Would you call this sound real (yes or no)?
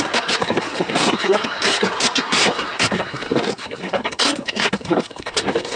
no